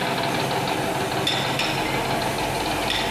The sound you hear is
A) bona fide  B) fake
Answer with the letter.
A